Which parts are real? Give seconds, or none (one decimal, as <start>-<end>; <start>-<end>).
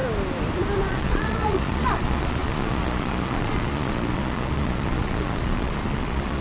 0.0-0.9